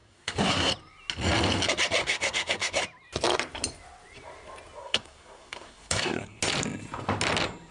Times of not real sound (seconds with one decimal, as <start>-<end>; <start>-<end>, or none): 0.0-0.7; 2.0-2.8; 4.8-6.4